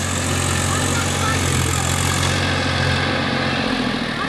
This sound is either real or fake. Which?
real